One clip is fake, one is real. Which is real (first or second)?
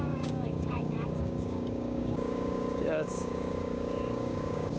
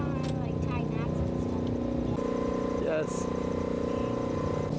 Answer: second